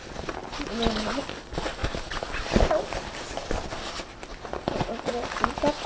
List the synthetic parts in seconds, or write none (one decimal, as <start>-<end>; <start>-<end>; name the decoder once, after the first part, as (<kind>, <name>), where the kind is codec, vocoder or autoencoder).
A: none